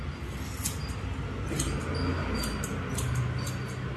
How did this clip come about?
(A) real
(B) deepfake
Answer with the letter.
A